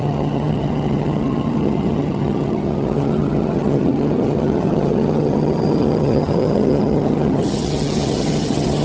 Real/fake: fake